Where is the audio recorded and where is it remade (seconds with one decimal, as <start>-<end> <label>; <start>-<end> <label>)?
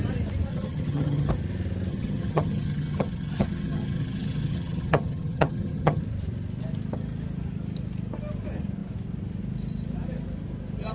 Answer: 0.0-0.5 recorded; 0.5-1.3 remade; 1.3-1.9 recorded; 1.9-6.0 remade; 6.0-10.9 recorded